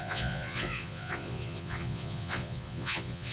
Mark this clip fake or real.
fake